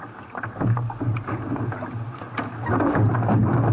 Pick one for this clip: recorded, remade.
recorded